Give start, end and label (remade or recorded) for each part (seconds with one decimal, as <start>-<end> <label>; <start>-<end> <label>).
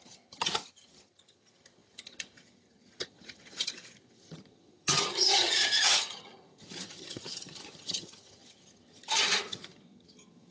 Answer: 0.0-10.5 remade